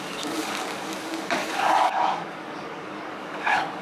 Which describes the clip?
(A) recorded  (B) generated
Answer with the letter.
B